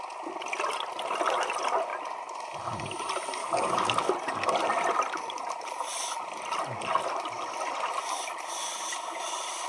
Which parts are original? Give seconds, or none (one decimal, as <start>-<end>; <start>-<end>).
0.0-3.4; 4.1-9.7